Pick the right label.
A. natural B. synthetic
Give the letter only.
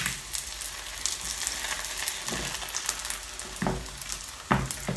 A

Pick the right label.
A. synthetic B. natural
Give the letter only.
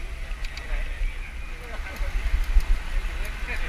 B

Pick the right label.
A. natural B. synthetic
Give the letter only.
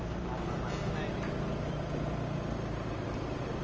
A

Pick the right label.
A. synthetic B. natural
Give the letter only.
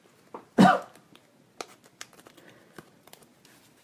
B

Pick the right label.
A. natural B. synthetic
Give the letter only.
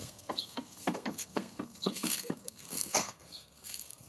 B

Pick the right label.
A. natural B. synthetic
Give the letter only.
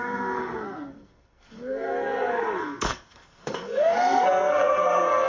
B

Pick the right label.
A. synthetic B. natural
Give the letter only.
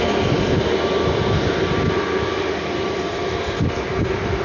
B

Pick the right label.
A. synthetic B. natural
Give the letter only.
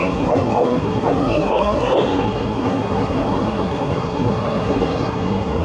A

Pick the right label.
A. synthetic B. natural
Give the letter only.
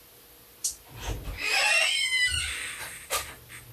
B